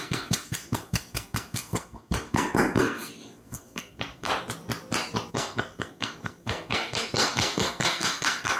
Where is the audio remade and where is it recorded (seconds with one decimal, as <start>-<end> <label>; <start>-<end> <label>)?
0.0-4.3 remade; 4.3-5.3 recorded; 5.3-8.6 remade